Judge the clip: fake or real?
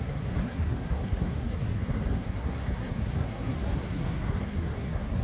fake